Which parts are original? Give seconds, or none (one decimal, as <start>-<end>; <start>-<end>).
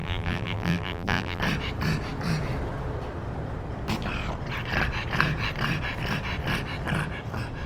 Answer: 1.4-7.7